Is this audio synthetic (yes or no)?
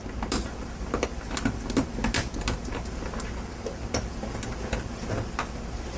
no